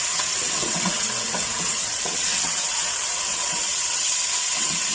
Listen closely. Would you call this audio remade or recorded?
remade